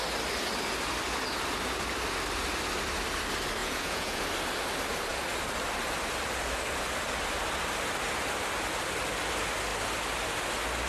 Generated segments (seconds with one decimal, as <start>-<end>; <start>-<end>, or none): 3.6-4.2